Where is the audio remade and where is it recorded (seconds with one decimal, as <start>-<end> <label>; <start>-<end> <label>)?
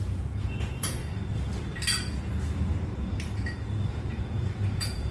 0.0-1.0 remade; 1.0-3.9 recorded; 3.9-5.1 remade